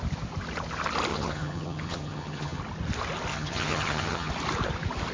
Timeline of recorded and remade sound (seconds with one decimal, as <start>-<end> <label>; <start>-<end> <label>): 0.0-1.1 recorded; 1.1-2.6 remade; 2.6-3.3 recorded; 3.3-4.3 remade; 4.3-5.1 recorded